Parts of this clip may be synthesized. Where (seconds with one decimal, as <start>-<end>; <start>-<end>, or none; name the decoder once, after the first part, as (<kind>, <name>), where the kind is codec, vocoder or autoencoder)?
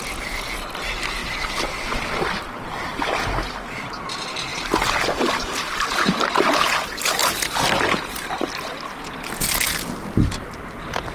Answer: 1.2-3.0 (vocoder, BigVGAN v2); 4.5-6.2